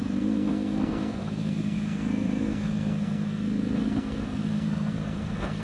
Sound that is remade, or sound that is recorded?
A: remade